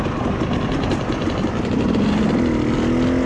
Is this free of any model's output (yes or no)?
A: yes